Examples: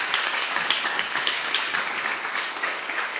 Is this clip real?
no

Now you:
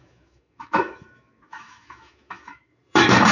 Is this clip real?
no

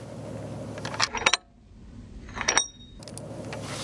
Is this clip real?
yes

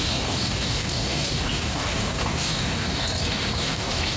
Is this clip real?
no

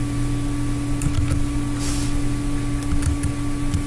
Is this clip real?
yes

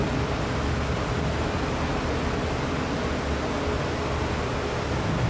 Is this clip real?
yes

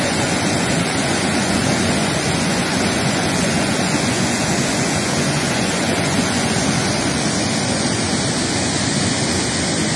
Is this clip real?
no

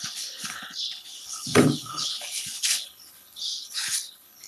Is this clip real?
no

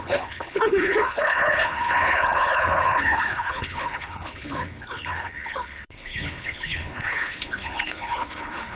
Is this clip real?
no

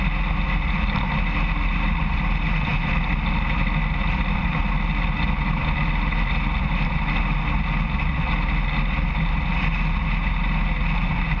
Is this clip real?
yes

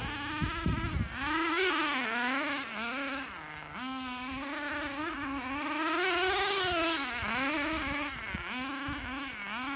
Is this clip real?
yes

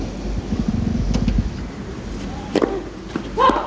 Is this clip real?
yes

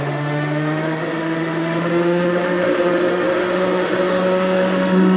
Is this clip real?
no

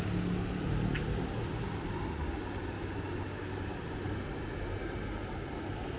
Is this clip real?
yes